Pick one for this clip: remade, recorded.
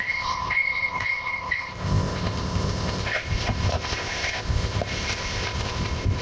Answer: remade